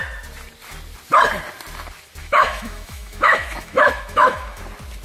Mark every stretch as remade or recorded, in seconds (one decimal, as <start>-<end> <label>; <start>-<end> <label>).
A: 0.0-2.2 recorded; 2.2-4.6 remade; 4.6-5.0 recorded